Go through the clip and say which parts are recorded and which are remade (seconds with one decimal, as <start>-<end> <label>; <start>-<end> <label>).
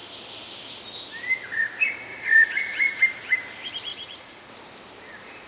0.0-2.1 recorded; 2.1-3.0 remade; 3.0-3.9 recorded; 3.9-4.5 remade; 4.5-5.5 recorded